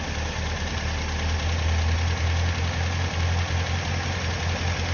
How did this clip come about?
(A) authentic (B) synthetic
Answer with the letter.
A